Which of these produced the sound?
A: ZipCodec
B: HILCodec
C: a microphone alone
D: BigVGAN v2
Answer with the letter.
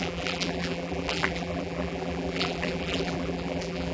D